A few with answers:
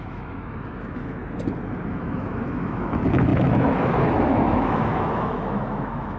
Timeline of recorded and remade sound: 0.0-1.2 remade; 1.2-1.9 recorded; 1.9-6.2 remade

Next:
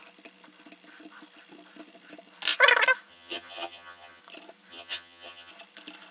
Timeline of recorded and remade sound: 0.0-3.1 recorded; 3.1-4.2 remade; 4.2-4.7 recorded; 4.7-5.5 remade; 5.5-6.1 recorded

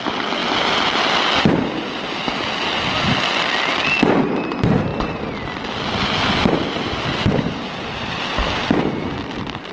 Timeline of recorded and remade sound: 0.0-9.7 recorded

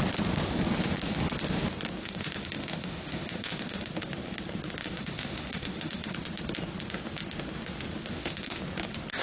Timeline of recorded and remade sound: 0.0-2.0 recorded; 2.0-3.9 remade; 3.9-4.8 recorded; 4.8-6.1 remade; 6.1-8.1 recorded; 8.1-8.6 remade; 8.6-9.2 recorded

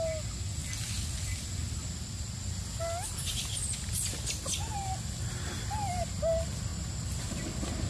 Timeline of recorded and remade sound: 0.0-7.9 recorded

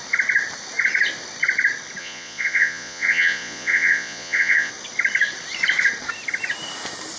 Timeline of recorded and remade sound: 0.0-2.0 recorded; 2.0-4.7 remade; 4.7-7.2 recorded

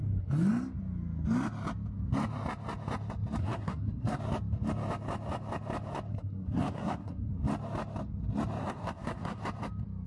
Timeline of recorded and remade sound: 0.0-3.4 recorded; 3.4-4.2 remade; 4.2-6.1 recorded; 6.1-7.3 remade; 7.3-8.6 recorded; 8.6-9.4 remade; 9.4-10.1 recorded

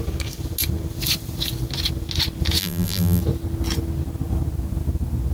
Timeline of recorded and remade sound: 0.0-2.6 recorded; 2.6-3.2 remade; 3.2-5.3 recorded